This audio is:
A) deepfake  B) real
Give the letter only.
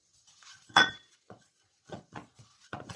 A